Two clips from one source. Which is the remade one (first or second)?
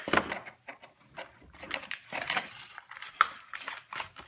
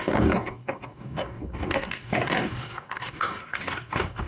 second